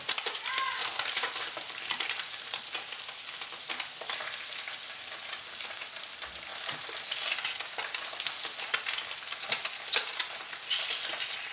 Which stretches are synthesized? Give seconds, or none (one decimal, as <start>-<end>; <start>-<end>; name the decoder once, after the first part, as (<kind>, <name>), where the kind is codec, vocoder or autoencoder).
none